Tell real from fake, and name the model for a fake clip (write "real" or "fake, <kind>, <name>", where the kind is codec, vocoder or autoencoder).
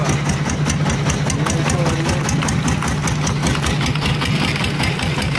real